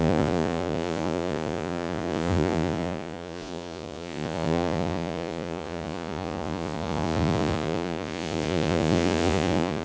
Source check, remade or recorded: remade